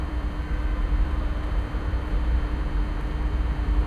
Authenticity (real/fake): fake